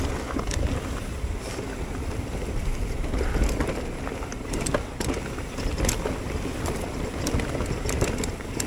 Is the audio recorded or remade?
recorded